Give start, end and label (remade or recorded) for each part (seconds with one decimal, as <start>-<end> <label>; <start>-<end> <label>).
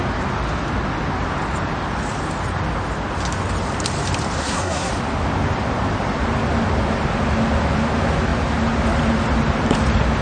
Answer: 0.0-4.4 recorded; 4.4-4.9 remade; 4.9-10.2 recorded